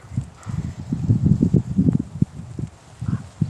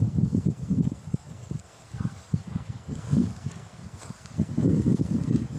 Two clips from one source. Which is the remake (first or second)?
second